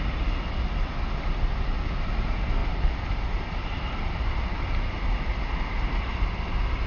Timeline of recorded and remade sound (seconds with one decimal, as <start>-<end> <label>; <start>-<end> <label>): 0.0-6.9 recorded